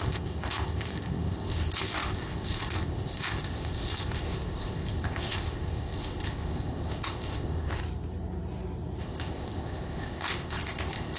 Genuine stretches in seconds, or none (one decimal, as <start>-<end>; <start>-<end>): 7.8-9.0